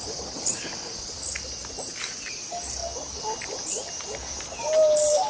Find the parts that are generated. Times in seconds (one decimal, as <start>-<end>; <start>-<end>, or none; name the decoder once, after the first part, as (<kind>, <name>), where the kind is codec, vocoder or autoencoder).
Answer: none